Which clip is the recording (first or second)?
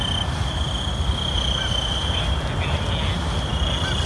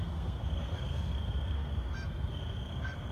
first